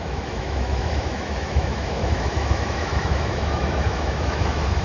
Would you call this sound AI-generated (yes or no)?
yes